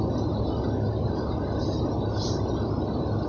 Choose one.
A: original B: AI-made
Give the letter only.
A